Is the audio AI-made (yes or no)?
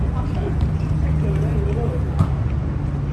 no